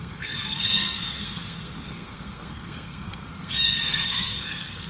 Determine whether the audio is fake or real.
fake